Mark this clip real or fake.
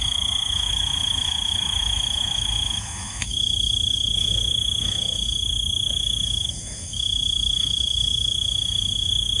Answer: fake